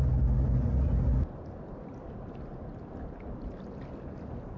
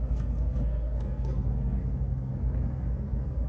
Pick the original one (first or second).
first